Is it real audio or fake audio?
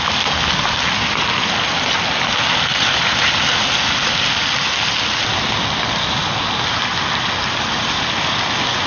real